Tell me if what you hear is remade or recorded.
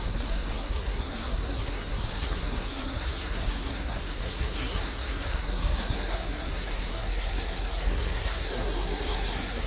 remade